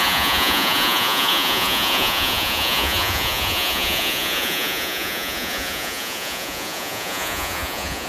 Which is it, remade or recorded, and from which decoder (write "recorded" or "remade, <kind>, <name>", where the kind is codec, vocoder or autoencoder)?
remade, vocoder, Vocos